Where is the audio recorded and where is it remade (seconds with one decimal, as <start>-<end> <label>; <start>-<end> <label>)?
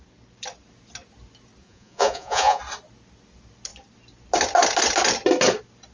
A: 0.0-1.6 recorded; 1.6-2.6 remade; 2.6-5.9 recorded